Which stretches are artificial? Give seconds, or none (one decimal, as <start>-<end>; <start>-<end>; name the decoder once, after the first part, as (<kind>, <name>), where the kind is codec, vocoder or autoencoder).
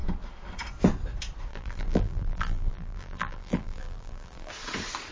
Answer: 1.5-4.5 (vocoder, BigVGAN v2)